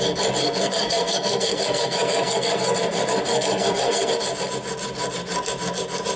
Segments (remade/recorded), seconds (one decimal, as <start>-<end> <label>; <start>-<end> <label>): 0.0-0.4 recorded; 0.4-4.1 remade; 4.1-6.2 recorded